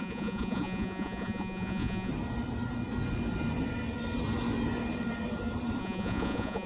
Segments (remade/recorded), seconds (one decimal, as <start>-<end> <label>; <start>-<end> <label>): 0.0-2.1 remade; 2.1-5.8 recorded; 5.8-6.7 remade